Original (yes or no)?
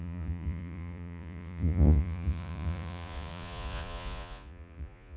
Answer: no